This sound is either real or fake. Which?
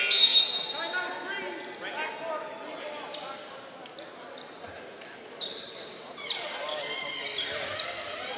real